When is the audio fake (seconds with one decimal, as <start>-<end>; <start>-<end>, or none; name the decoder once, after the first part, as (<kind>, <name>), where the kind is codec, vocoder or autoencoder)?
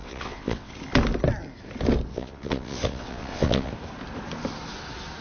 0.0-0.7 (vocoder, WaveNeXt); 2.1-3.7